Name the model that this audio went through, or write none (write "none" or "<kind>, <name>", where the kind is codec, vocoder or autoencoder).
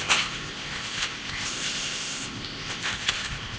codec, ZipCodec